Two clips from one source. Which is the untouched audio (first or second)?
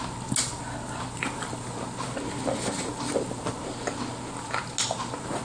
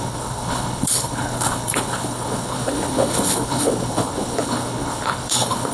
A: first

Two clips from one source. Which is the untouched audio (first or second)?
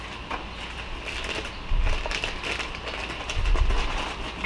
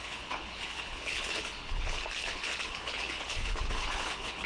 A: first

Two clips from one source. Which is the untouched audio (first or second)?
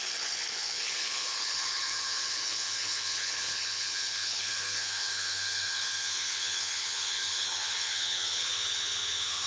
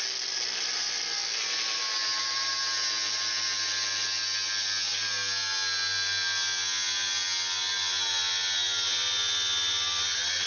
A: second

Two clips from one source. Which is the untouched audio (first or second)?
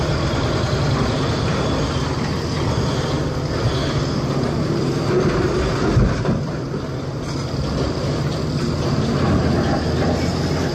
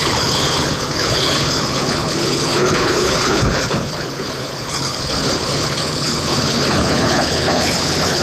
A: first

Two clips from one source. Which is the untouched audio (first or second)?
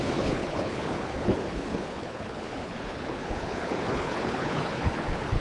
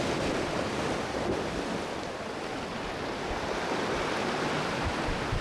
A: second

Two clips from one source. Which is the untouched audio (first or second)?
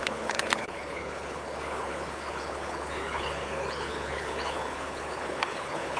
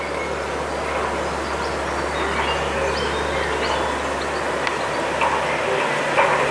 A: second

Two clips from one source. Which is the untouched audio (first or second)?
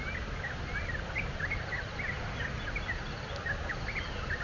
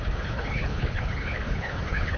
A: first